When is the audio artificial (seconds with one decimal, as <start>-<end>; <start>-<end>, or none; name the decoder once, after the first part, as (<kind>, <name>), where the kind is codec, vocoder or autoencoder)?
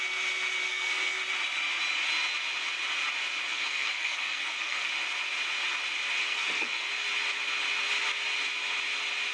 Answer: 0.7-1.2 (codec, SNAC); 3.5-4.9; 6.2-6.9